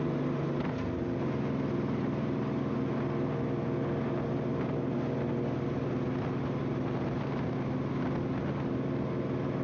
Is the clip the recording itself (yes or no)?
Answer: yes